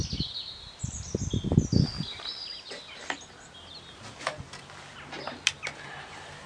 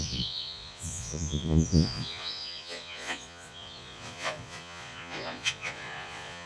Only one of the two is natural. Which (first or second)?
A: first